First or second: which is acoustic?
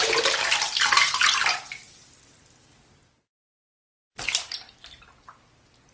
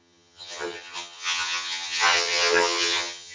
first